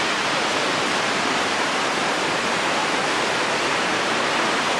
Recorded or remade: remade